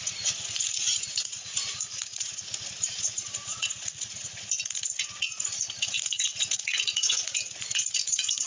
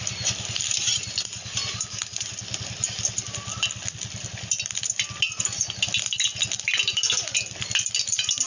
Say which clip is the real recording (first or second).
second